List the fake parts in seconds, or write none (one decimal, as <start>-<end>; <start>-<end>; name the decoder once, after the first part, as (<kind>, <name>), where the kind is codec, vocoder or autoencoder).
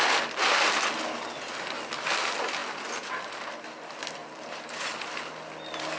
4.2-5.2 (vocoder, BigVGAN v2)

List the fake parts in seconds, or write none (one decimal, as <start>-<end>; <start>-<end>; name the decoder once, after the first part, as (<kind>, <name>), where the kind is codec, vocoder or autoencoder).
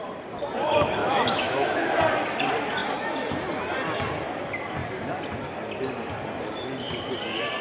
1.0-1.9 (autoencoder, DAC-VAE)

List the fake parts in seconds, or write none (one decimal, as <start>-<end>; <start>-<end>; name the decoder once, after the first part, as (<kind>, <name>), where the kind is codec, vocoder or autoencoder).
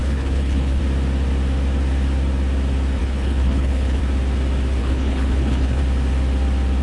0.0-0.8 (codec, HILCodec); 3.0-4.0; 4.8-5.8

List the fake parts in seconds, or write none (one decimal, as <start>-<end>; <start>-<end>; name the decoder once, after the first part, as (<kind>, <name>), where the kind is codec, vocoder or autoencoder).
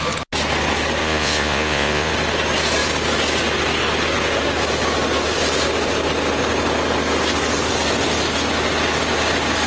1.0-2.1 (vocoder, Vocos)